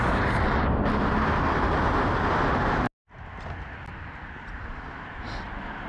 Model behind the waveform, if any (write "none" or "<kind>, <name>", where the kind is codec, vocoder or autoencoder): none